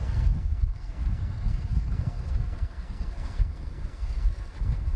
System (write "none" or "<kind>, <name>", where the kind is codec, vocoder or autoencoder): codec, SNAC